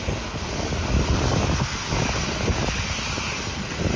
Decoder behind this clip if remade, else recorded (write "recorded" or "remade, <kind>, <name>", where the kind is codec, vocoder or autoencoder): recorded